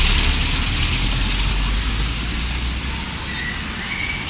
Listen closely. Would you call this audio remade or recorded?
recorded